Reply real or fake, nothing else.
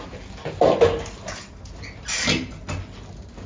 real